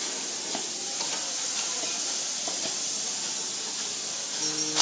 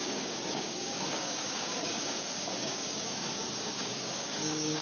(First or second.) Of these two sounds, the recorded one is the first